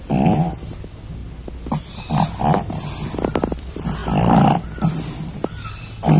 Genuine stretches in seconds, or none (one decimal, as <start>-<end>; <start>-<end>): 0.0-6.2